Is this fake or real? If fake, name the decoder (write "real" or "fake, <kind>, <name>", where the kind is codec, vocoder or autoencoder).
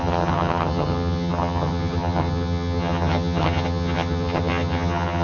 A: fake, vocoder, HiFi-GAN